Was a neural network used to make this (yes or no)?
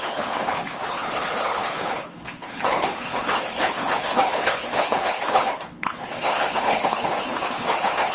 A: yes